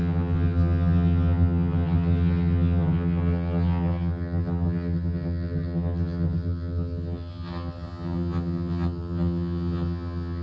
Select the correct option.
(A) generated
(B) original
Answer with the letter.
A